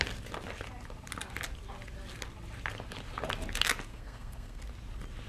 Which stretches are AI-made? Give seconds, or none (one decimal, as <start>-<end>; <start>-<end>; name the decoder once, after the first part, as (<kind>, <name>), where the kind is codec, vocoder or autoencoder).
3.9-4.6 (codec, SNAC)